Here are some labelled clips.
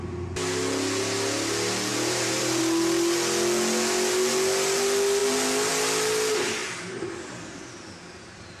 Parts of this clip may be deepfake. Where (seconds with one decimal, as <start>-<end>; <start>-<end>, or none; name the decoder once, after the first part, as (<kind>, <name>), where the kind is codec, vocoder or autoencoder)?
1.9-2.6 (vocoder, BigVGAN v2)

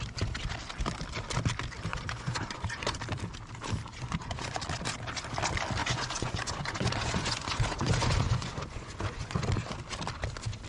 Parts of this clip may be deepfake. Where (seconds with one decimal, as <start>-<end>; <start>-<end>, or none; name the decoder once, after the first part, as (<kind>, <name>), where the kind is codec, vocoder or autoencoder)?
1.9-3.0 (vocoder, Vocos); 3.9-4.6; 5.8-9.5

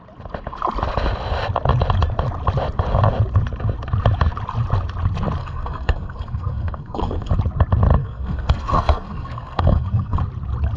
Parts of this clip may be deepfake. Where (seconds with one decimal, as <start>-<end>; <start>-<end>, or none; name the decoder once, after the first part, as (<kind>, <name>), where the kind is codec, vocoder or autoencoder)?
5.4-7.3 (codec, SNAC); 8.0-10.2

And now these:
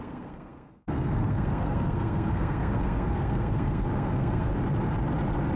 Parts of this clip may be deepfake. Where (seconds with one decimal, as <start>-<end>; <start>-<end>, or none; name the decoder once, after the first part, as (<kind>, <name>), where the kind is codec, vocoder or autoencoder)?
0.0-4.5 (codec, SNAC)

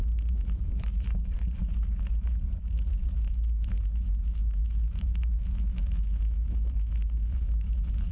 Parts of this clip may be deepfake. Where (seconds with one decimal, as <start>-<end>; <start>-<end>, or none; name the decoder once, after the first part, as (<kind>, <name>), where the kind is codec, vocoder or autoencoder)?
0.0-0.8 (autoencoder, DAC-VAE); 2.9-8.1

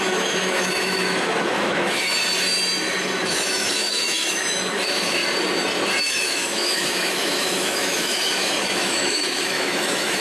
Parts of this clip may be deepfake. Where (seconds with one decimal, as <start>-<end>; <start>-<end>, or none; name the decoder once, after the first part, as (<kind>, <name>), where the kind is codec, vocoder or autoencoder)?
0.0-2.1 (autoencoder, DAC-VAE); 3.2-5.2; 6.0-10.2

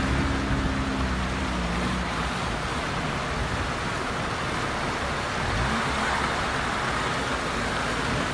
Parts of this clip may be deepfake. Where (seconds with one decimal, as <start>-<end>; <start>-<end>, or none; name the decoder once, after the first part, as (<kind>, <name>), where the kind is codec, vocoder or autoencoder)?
none